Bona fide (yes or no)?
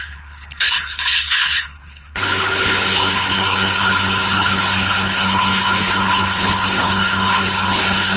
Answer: no